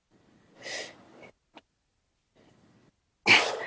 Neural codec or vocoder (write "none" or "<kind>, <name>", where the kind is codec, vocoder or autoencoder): none